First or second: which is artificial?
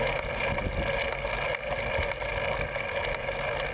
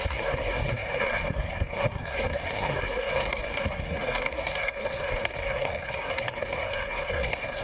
second